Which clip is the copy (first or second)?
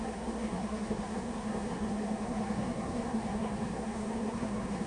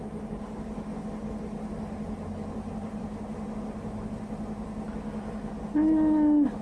first